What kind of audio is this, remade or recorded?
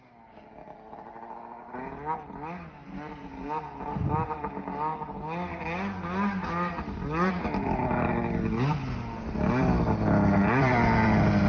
recorded